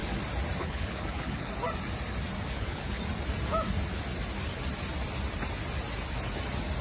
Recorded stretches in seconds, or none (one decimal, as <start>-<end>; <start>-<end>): 0.0-0.6; 1.5-2.5; 3.0-6.8